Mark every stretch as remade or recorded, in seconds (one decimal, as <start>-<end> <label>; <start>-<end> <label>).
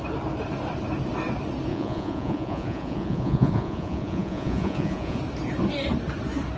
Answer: 0.0-1.7 recorded; 1.7-5.2 remade; 5.2-6.6 recorded